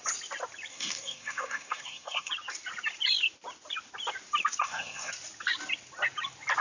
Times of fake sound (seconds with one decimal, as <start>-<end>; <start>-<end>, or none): 0.7-2.3; 4.6-5.1